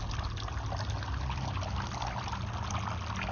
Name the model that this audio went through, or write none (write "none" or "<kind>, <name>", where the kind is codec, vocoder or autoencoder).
none